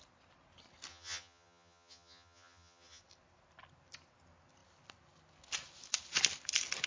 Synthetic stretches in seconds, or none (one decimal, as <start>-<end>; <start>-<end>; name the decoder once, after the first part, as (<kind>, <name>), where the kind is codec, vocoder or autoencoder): 0.9-3.0 (vocoder, HiFi-GAN)